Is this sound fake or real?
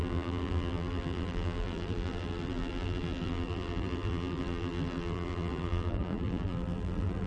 fake